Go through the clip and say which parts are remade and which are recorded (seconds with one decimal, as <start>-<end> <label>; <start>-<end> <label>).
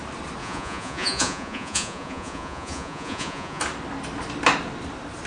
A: 0.0-0.4 recorded; 0.4-3.6 remade; 3.6-5.3 recorded